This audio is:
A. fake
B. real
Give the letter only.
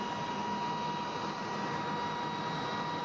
B